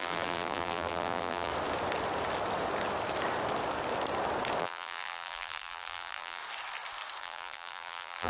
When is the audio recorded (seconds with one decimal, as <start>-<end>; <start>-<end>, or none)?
1.5-4.6; 6.4-7.2